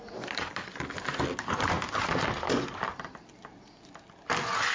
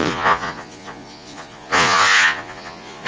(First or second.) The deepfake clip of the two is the second